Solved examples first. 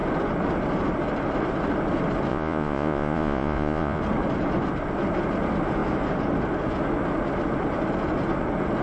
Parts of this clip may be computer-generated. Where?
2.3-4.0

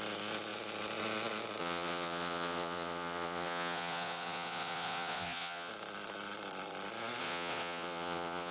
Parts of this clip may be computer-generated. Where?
1.6-5.7; 7.2-8.5

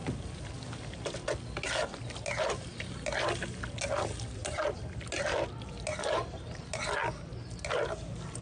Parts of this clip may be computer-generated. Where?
none

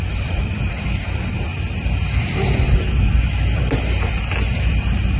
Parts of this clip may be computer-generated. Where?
0.0-1.5; 4.6-5.2

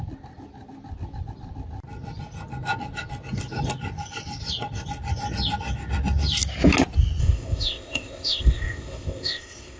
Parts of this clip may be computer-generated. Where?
7.2-9.8

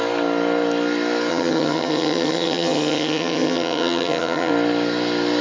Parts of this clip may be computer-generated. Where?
1.3-4.5